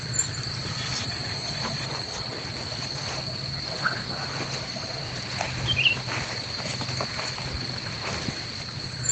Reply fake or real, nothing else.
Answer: real